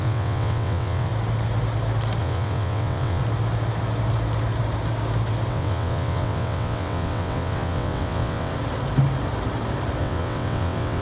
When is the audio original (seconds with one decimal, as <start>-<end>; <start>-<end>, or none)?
1.1-2.2; 3.2-5.5; 8.5-10.0